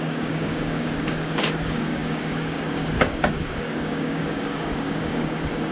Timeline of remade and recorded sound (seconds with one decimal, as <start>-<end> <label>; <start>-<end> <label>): 0.0-5.7 remade